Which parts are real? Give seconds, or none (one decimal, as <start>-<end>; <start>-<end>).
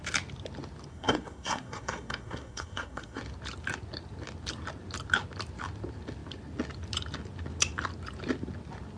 0.0-0.9; 3.2-9.0